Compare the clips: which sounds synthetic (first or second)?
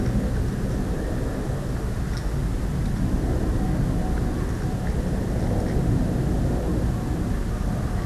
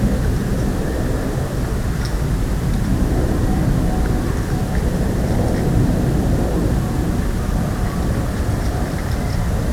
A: second